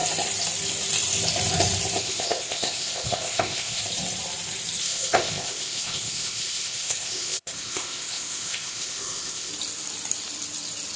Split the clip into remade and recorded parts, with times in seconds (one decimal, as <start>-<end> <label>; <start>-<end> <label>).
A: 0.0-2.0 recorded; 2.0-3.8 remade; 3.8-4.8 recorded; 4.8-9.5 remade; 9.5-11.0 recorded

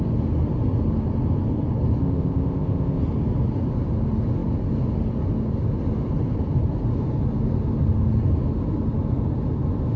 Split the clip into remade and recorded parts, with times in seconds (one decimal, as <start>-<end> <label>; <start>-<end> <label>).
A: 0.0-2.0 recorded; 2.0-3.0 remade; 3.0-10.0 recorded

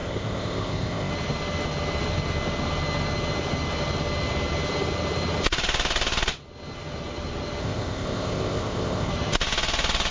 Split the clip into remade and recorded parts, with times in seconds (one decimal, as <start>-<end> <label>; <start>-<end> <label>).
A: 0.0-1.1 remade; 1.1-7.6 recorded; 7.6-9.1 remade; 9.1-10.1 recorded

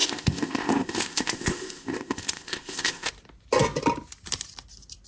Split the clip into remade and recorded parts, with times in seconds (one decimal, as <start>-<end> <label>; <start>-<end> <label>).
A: 0.0-3.1 remade; 3.1-5.1 recorded